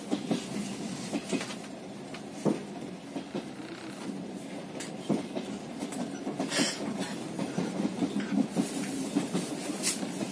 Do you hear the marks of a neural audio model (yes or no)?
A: no